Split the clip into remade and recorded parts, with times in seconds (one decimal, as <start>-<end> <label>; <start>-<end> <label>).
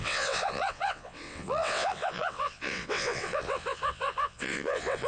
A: 0.0-5.1 remade